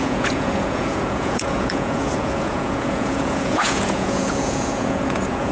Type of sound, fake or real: fake